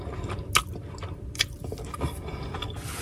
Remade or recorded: recorded